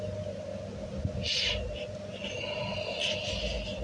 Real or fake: real